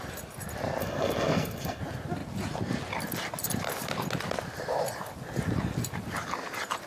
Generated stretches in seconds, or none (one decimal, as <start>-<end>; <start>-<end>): 0.8-1.8